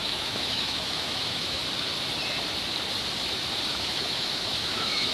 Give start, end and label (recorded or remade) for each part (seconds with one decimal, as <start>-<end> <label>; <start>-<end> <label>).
0.0-1.6 remade; 1.6-3.7 recorded; 3.7-5.1 remade